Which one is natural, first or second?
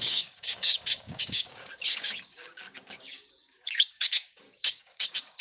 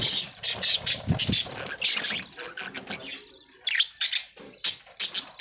second